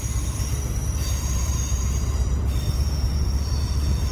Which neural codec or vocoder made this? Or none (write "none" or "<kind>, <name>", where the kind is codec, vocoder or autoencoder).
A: vocoder, BigVGAN v2